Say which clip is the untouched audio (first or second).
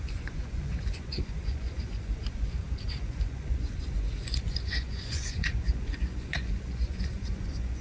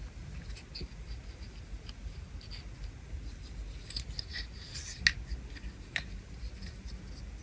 second